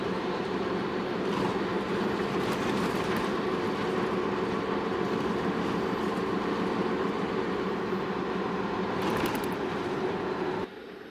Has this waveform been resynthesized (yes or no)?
no